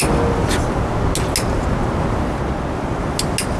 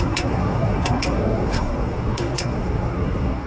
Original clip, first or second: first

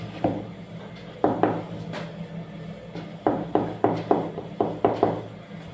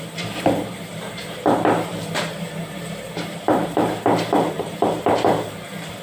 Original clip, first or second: first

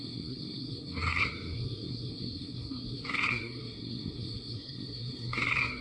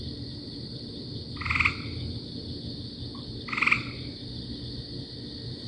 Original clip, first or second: second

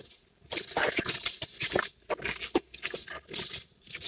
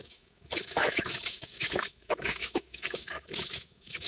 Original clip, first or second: first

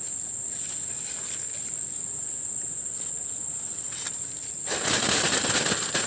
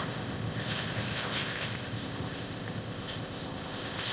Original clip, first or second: first